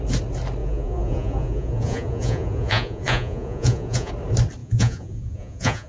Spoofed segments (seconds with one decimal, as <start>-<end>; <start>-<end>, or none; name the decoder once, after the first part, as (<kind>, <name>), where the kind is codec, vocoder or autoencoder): 0.6-4.1 (vocoder, Vocos); 4.6-5.9